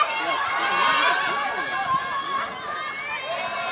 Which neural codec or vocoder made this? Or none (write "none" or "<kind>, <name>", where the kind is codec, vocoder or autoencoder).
none